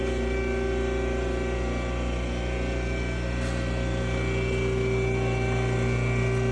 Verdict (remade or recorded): recorded